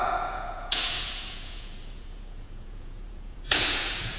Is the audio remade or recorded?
remade